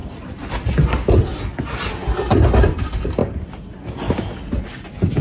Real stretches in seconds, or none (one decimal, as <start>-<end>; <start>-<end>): 0.0-5.2